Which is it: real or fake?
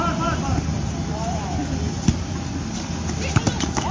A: real